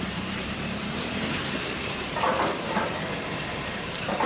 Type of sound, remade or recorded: remade